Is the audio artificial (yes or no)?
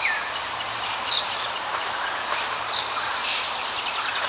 yes